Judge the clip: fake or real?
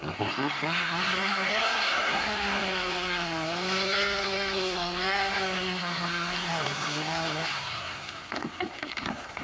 fake